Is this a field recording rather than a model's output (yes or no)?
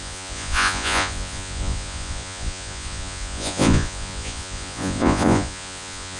no